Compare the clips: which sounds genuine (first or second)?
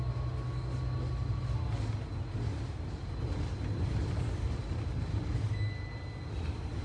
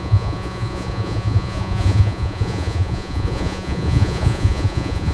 first